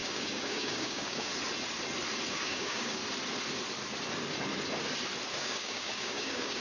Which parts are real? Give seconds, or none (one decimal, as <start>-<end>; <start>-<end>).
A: 1.3-2.3; 3.0-5.4